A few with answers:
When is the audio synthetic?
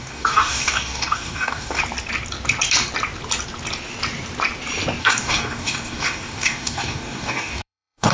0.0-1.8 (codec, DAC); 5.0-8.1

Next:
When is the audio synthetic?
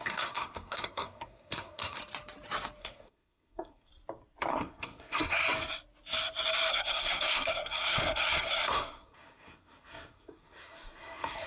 0.0-2.0 (codec, SNAC); 2.8-3.9; 4.5-5.4; 6.7-11.5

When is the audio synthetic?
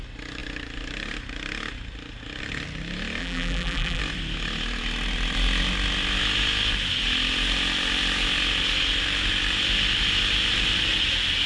3.2-4.0 (vocoder, BigVGAN v2)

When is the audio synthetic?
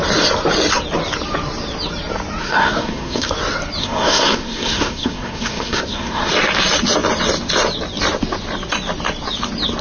2.4-3.3 (codec, SNAC); 3.8-6.3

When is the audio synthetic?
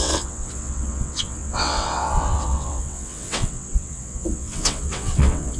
0.0-5.6 (vocoder, WaveNeXt)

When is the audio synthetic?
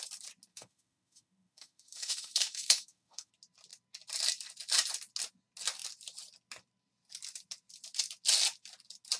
0.5-3.3 (autoencoder, DAC-VAE)